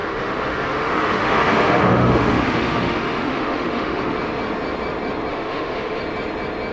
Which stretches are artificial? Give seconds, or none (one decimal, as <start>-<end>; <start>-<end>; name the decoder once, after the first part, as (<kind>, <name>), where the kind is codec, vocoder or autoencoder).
0.0-4.0 (autoencoder, DAC-VAE); 5.3-6.0